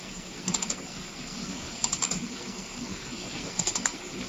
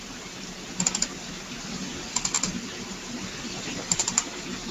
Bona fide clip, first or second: second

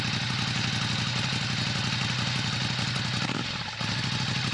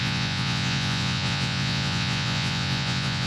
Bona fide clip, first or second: first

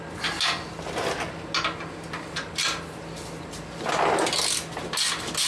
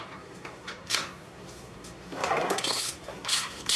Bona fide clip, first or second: first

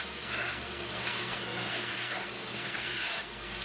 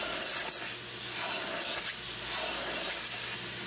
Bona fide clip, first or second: second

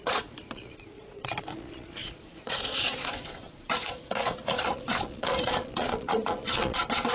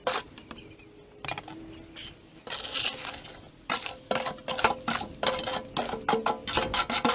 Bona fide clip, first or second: second